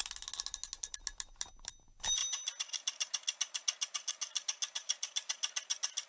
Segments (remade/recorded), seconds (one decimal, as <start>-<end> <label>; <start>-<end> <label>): 0.0-6.1 recorded